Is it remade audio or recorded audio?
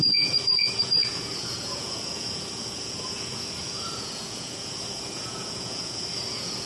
remade